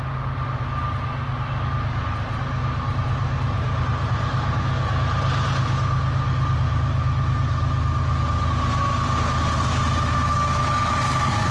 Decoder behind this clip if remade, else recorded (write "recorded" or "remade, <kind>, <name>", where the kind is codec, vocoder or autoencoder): recorded